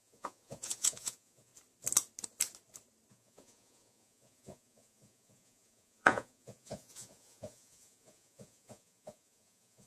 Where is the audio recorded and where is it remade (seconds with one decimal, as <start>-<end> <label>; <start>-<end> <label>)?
0.0-1.5 remade; 1.5-3.1 recorded; 3.1-9.9 remade